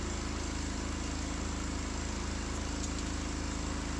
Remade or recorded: recorded